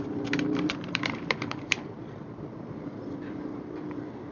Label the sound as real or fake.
fake